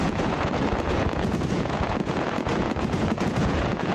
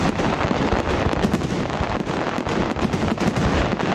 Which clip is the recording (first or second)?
second